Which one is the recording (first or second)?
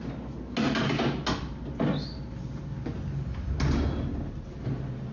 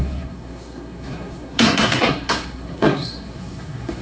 first